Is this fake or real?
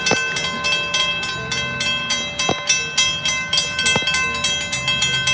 real